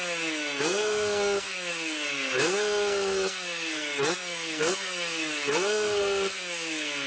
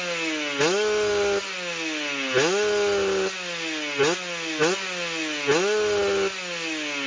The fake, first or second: first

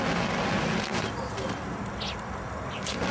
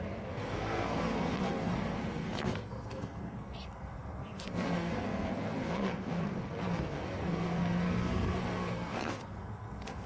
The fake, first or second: second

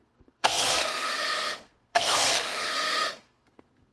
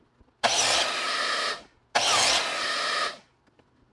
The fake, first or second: first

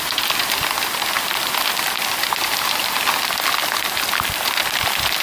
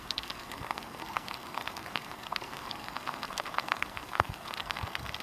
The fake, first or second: second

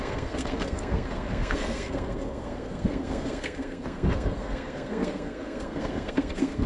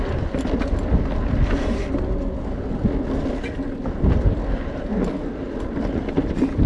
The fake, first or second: first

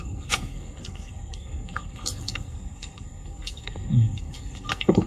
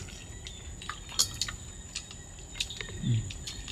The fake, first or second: first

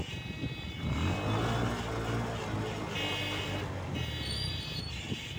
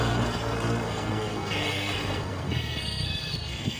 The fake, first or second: second